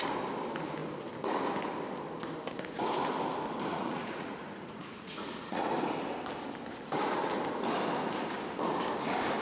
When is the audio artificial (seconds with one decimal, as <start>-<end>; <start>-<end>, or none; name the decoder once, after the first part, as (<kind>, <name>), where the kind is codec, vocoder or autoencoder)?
3.7-5.7 (vocoder, Vocos)